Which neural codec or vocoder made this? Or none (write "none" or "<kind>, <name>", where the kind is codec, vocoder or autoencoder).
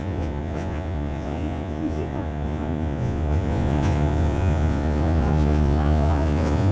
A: vocoder, Vocos